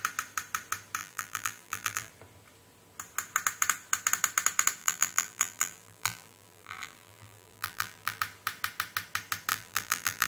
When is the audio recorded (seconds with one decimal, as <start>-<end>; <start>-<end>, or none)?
0.0-1.0; 2.1-4.8; 8.2-9.5